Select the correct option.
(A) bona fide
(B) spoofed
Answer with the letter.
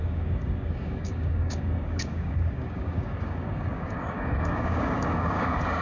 B